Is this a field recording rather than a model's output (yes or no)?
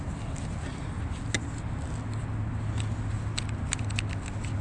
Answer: yes